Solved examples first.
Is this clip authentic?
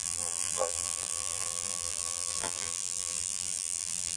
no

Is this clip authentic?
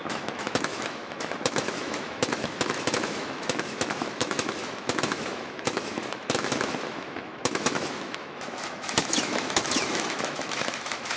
no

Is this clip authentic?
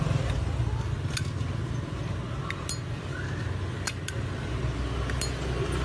yes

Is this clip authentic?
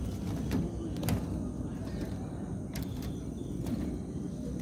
yes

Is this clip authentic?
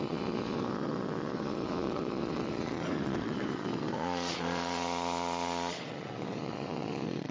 no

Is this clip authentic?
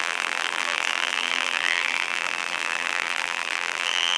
no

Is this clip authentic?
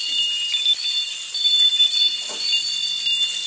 yes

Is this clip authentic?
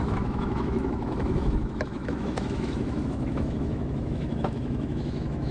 no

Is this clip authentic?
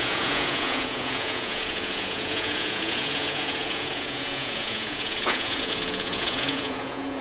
no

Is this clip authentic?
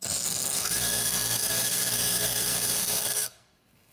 no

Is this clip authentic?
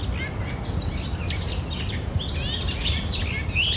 yes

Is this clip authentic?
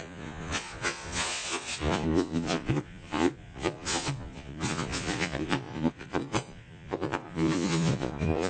no